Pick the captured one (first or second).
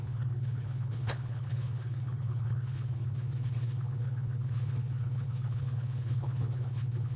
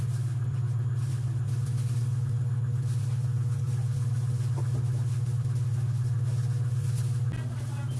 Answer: second